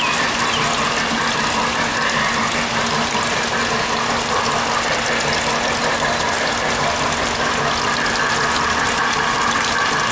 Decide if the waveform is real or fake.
real